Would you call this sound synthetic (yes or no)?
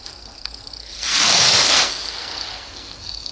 yes